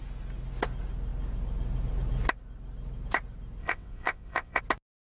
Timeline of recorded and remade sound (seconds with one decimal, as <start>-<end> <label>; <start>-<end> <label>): 0.0-3.6 recorded; 3.6-4.6 remade; 4.6-5.2 recorded